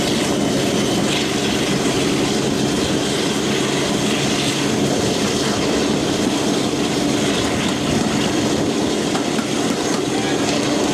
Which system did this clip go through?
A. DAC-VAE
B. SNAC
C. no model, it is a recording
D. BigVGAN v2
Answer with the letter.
C